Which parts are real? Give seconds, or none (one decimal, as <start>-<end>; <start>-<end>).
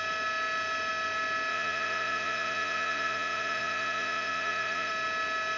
0.0-1.5; 4.9-5.6